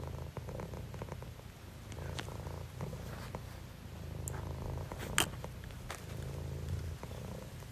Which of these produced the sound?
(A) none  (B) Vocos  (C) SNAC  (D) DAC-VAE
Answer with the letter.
A